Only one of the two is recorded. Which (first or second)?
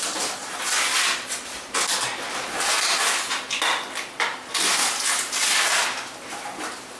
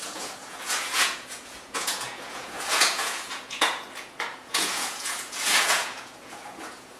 first